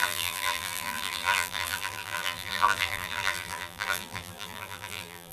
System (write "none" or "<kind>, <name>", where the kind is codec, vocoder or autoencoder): vocoder, BigVGAN v2